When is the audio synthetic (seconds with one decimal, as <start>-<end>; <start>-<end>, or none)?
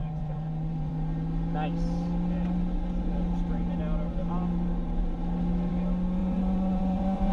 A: 0.0-0.9; 6.2-7.3